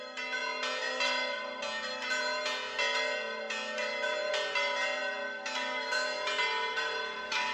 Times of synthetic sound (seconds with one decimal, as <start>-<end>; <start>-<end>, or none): none